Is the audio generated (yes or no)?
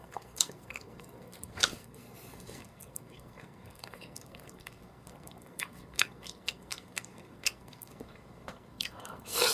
yes